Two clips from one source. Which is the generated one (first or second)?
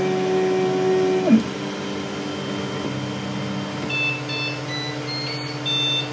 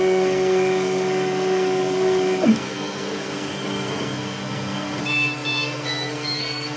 second